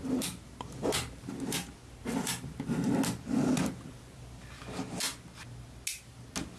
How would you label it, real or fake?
real